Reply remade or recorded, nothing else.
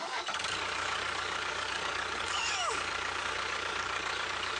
remade